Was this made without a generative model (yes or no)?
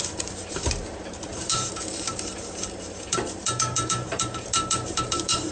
no